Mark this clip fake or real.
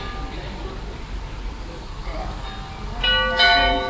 real